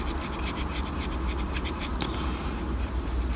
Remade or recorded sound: recorded